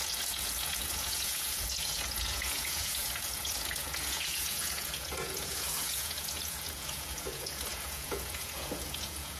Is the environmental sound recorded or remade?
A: remade